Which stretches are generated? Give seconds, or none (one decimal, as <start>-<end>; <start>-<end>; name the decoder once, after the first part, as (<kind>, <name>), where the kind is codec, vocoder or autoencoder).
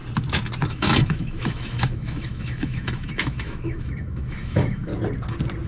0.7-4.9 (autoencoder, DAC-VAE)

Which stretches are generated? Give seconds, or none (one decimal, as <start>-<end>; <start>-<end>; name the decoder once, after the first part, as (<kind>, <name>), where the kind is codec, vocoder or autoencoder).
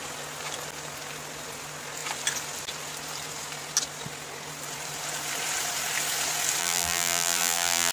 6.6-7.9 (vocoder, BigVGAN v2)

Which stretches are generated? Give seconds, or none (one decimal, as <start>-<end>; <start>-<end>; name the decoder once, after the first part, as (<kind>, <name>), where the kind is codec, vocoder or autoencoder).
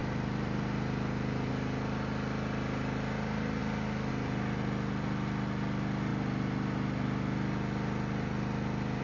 0.0-1.5 (vocoder, BigVGAN v2)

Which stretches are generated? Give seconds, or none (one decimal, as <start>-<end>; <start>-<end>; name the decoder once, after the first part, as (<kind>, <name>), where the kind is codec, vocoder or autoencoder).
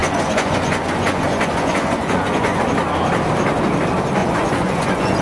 0.0-2.6 (vocoder, Vocos); 4.2-5.2